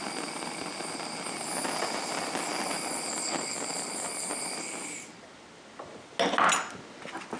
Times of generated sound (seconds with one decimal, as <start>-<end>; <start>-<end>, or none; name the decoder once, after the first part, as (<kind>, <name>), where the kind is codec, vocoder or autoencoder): none